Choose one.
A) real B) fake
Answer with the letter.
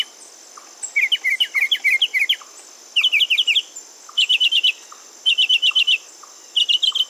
A